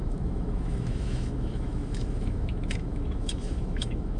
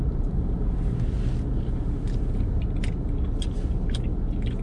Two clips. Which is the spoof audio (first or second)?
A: first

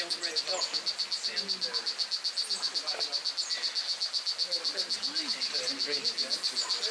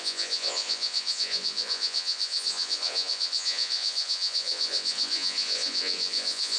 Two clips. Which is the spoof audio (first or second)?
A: second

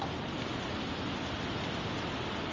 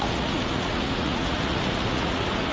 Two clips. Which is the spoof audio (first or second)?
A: second